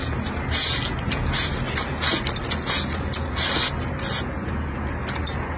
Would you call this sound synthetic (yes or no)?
no